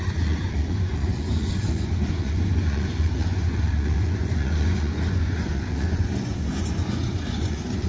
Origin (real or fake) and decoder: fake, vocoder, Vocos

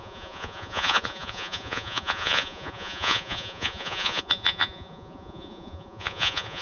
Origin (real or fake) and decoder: fake, vocoder, Vocos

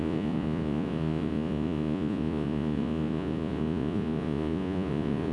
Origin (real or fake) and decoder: fake, vocoder, Vocos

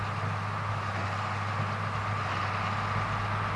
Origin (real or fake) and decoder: real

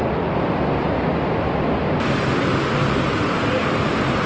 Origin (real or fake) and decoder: real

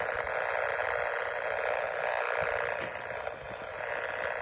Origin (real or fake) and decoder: real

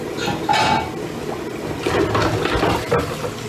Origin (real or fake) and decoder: real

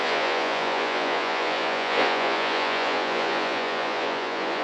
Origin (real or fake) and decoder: fake, vocoder, Vocos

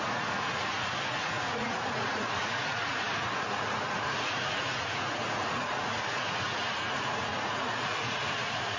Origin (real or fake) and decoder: fake, vocoder, Vocos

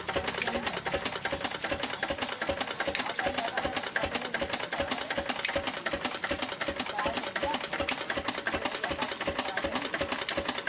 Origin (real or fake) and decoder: real